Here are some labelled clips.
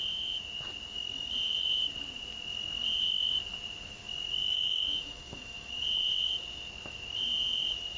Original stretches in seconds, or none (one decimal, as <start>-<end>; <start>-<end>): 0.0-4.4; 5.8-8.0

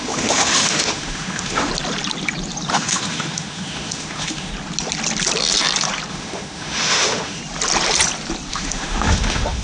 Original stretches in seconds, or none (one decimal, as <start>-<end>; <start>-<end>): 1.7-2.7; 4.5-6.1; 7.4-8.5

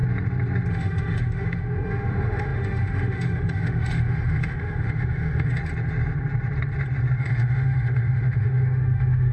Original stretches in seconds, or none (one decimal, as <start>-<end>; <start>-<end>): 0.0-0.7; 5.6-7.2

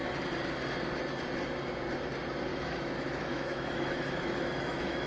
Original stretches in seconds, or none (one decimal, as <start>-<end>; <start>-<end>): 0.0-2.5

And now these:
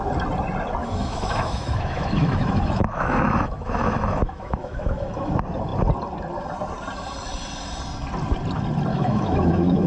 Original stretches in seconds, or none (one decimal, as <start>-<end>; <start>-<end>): 0.0-0.8; 5.3-8.9

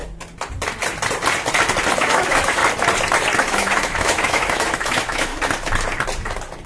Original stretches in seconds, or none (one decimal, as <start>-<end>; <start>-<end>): 0.0-2.0; 2.6-3.4; 5.3-6.7

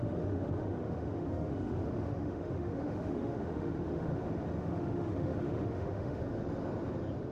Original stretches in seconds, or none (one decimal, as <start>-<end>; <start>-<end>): 4.1-4.6; 6.2-7.3

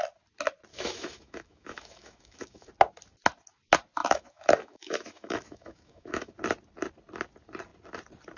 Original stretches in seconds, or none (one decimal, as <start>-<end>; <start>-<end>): 0.0-0.7; 2.7-4.0; 6.3-8.4